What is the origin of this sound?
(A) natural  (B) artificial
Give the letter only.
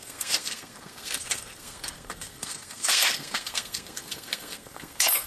B